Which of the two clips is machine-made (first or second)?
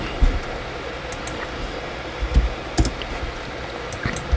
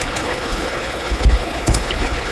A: second